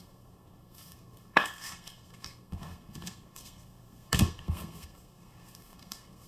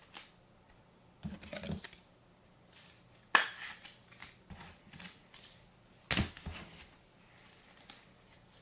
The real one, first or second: second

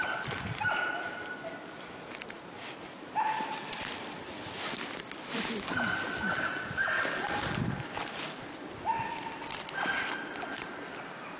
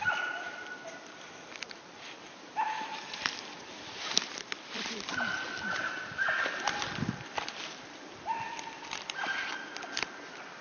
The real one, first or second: first